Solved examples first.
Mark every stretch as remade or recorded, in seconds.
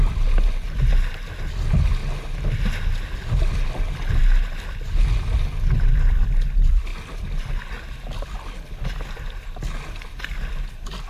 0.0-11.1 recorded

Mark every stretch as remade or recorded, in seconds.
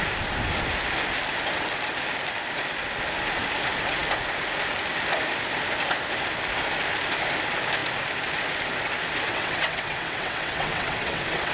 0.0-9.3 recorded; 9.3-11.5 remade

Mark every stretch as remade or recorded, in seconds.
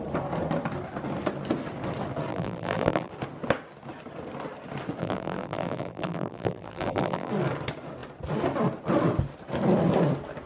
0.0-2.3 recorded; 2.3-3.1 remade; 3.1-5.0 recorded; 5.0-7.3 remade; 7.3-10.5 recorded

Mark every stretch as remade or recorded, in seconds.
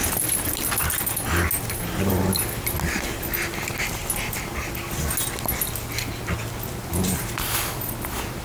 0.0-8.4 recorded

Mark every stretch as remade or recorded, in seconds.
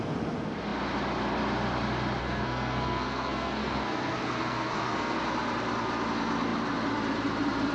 0.0-2.2 recorded; 2.2-5.2 remade; 5.2-7.7 recorded